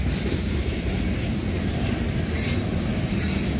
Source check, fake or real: real